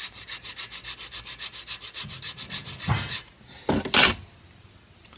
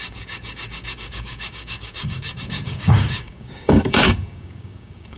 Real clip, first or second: first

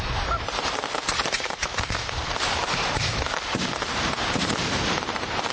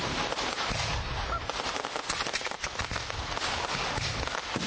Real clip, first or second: second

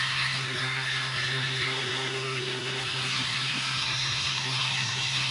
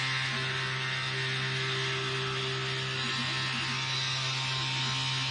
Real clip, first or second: second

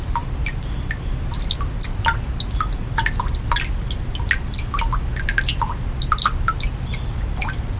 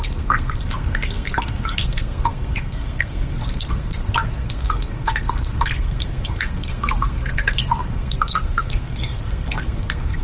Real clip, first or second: first